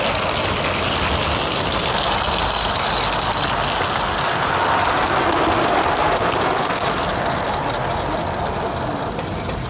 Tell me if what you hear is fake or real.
real